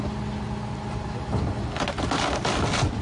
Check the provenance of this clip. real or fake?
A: real